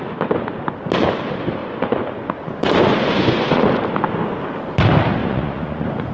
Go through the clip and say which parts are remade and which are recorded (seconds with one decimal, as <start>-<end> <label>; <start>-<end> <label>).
0.0-1.6 recorded; 1.6-3.6 remade; 3.6-5.2 recorded; 5.2-6.1 remade